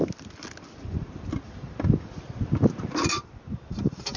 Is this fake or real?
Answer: real